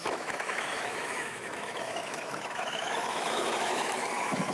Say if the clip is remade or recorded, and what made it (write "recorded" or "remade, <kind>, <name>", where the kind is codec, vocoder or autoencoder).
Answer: remade, autoencoder, DAC-VAE